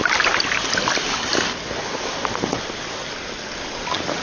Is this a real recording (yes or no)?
yes